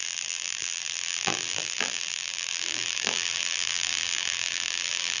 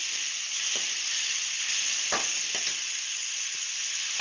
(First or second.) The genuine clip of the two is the second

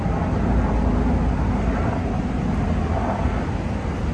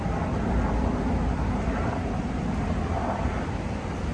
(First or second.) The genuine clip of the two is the first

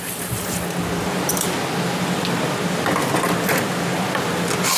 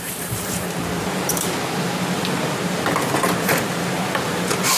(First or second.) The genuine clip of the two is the first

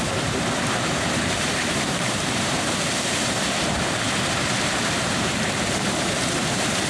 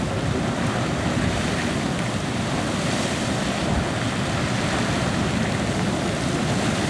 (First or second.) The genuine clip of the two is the second